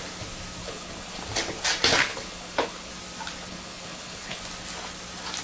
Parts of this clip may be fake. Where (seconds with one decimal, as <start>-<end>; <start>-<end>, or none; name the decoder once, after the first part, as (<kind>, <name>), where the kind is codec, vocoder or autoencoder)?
0.6-1.2 (codec, HILCodec); 2.0-2.9; 3.5-4.4